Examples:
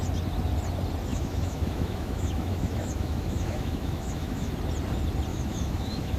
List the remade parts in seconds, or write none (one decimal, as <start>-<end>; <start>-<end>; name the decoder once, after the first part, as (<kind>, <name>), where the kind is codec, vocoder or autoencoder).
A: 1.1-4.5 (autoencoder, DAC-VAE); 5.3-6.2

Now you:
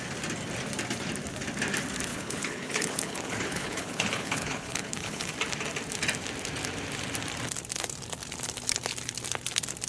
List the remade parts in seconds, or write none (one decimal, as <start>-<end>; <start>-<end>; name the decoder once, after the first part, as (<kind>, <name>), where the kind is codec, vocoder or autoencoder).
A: 2.1-5.3 (codec, HILCodec)

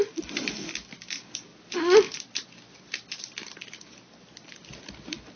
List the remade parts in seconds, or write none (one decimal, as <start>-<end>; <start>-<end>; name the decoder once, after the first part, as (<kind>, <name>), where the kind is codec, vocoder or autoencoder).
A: none

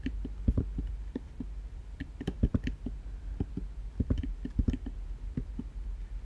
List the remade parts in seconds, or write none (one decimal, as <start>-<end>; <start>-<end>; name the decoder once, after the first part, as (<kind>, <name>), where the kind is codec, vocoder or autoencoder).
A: none